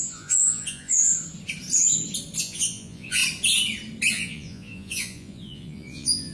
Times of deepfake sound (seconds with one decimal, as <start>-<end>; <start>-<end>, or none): 0.0-1.1; 2.4-3.2; 4.1-6.3